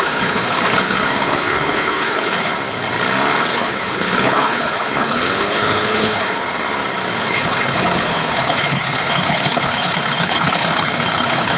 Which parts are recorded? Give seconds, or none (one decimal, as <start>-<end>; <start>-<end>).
2.5-3.5; 6.4-7.2